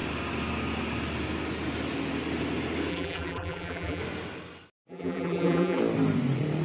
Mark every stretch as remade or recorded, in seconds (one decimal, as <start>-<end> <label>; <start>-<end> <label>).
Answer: 0.0-2.9 recorded; 2.9-4.0 remade; 4.0-4.9 recorded; 4.9-5.8 remade; 5.8-6.6 recorded